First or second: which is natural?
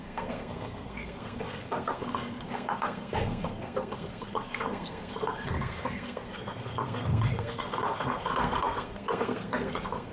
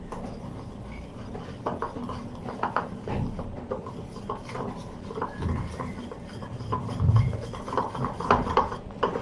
second